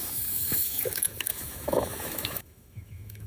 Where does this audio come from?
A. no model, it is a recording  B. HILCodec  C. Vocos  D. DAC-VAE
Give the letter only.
D